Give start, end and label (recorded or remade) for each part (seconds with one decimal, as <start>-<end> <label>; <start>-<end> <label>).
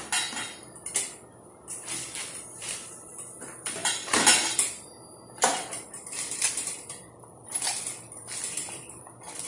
0.0-3.8 recorded; 3.8-9.0 remade; 9.0-9.5 recorded